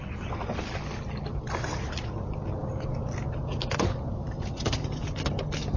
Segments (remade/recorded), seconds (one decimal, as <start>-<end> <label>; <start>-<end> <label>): 0.0-5.8 recorded